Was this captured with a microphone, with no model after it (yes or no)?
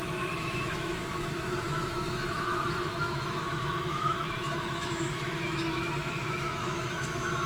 no